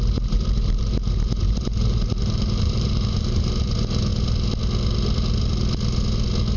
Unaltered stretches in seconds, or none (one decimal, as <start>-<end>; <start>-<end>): 4.1-6.6